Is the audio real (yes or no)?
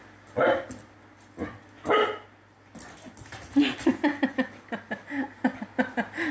yes